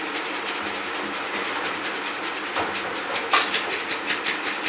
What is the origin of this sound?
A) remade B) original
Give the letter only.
B